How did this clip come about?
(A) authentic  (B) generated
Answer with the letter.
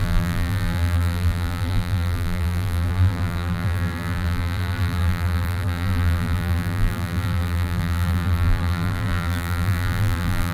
B